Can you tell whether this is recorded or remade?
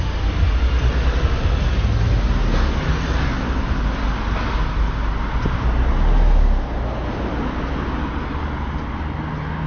recorded